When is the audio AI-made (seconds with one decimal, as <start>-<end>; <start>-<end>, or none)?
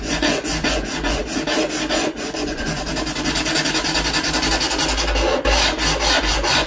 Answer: 0.0-1.2; 1.9-2.8; 6.2-6.7